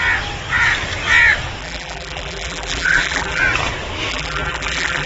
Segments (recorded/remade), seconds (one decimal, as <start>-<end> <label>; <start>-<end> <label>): 0.0-1.6 recorded; 1.6-3.4 remade; 3.4-4.1 recorded; 4.1-5.1 remade